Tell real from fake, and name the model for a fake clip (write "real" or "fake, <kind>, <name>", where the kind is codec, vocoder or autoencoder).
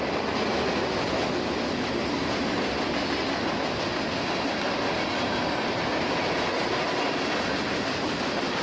real